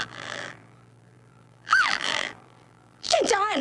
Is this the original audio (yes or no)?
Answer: no